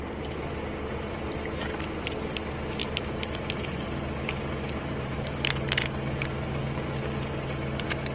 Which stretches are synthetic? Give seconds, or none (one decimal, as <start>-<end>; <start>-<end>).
2.8-5.8

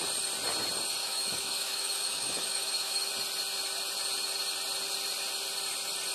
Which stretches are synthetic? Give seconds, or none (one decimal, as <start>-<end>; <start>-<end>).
1.0-3.1

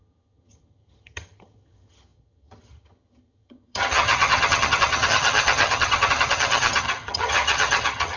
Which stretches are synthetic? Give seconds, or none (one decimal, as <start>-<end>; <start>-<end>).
0.0-8.2

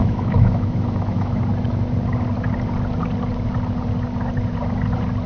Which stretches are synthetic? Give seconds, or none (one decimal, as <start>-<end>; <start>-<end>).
0.0-1.4

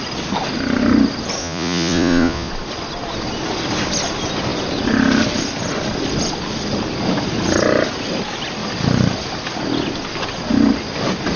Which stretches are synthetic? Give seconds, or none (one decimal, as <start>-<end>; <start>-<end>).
1.4-2.5

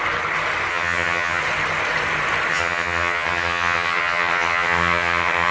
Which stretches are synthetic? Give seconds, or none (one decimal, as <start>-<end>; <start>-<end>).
0.7-1.4; 2.5-5.5

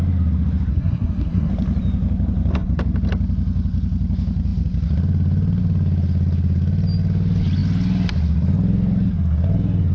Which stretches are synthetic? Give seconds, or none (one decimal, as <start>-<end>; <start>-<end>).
0.7-1.5

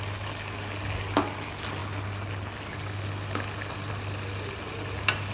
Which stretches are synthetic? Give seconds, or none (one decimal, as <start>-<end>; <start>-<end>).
none